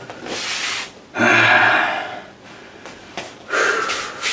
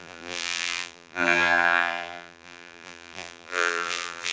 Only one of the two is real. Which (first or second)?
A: first